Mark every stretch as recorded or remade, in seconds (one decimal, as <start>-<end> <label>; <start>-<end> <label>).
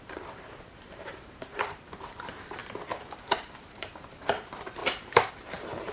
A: 0.0-2.6 remade; 2.6-3.2 recorded; 3.2-5.9 remade